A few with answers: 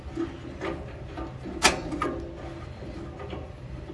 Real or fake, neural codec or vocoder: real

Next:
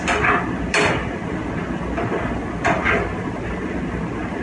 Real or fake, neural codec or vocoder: real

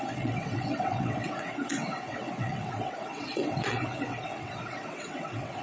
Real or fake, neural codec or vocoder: fake, vocoder, WaveNeXt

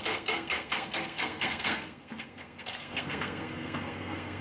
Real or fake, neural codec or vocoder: fake, codec, SNAC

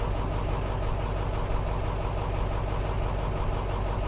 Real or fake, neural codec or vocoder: real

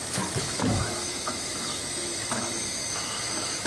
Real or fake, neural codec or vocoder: fake, autoencoder, DAC-VAE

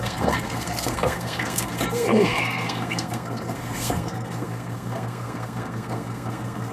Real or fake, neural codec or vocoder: fake, codec, SNAC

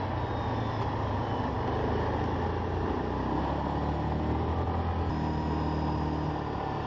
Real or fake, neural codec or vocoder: real